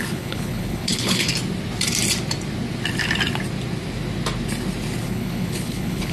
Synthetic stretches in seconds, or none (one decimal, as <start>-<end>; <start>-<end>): 0.0-1.3; 5.0-6.1